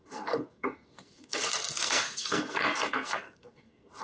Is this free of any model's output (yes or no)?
no